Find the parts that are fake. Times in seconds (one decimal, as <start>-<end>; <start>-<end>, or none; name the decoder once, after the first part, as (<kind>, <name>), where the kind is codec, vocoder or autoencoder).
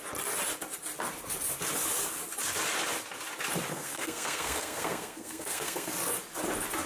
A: 3.7-5.9 (codec, SNAC)